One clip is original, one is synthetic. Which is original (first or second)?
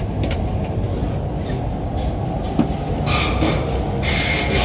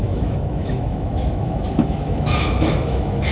first